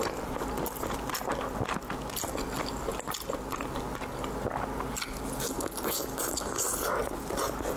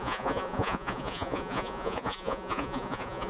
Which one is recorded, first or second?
first